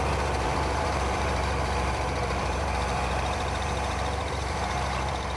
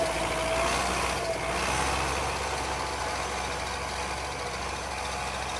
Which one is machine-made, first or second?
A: first